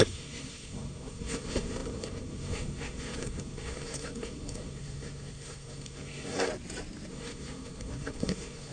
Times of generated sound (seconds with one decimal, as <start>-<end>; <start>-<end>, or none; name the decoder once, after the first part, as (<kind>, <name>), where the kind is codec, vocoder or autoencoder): 0.0-6.5 (codec, SNAC); 7.1-8.7